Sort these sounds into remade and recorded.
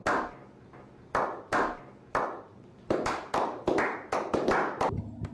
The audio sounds recorded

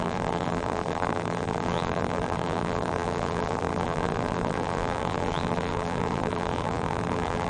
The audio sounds remade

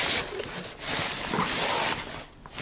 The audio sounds recorded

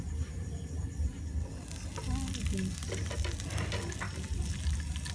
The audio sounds recorded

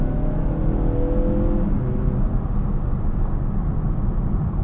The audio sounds recorded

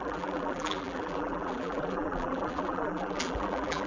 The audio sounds remade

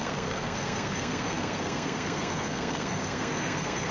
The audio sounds remade